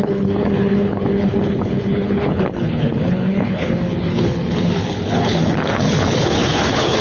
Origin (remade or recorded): remade